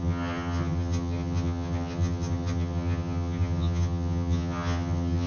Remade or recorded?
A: remade